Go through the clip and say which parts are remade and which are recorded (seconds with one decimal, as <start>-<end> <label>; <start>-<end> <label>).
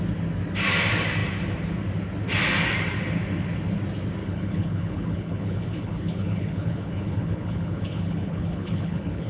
0.0-4.2 recorded; 4.2-9.3 remade